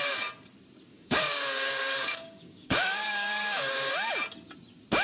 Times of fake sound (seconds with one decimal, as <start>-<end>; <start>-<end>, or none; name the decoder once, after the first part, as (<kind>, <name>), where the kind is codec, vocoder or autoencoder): 0.9-3.9 (codec, DAC)